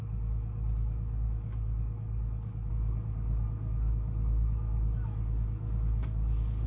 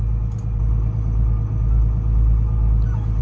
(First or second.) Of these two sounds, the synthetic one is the first